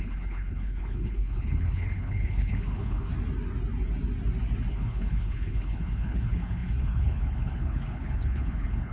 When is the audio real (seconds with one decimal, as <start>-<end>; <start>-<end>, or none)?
3.1-4.7